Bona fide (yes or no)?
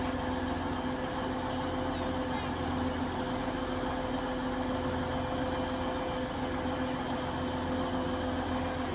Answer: yes